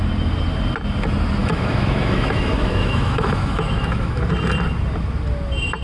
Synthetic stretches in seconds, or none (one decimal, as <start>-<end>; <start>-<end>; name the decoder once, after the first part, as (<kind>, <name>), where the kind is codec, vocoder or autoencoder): 1.4-4.2 (autoencoder, DAC-VAE)